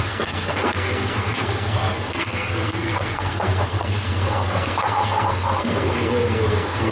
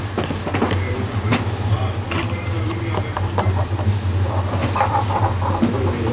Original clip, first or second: second